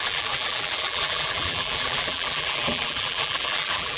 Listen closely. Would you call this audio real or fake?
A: fake